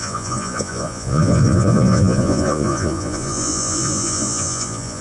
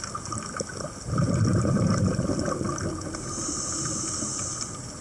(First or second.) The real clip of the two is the second